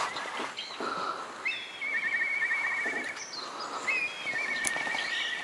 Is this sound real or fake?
real